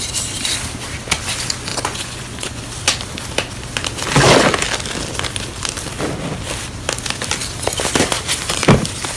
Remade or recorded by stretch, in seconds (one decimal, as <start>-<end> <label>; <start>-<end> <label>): 0.0-1.7 recorded; 1.7-2.6 remade; 2.6-9.2 recorded